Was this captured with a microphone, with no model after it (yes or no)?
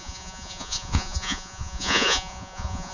no